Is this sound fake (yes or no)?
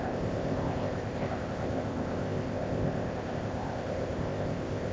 yes